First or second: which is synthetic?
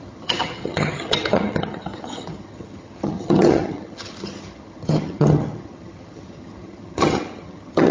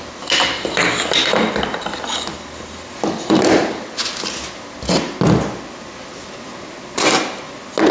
first